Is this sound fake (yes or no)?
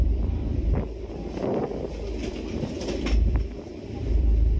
yes